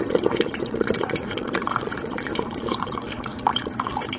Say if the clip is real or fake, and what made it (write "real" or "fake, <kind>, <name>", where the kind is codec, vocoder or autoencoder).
fake, vocoder, Vocos